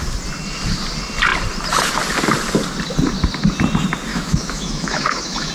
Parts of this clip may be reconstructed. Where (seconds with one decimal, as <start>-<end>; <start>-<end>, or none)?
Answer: 4.1-5.5